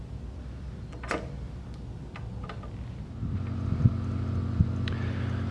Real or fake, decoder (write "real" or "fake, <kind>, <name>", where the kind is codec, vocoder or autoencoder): real